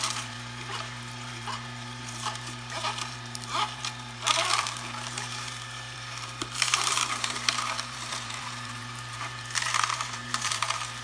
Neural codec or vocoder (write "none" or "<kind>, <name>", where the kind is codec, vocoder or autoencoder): vocoder, BigVGAN v2